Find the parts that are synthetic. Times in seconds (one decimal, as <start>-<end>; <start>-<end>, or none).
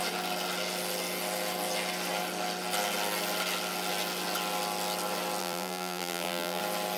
5.4-6.6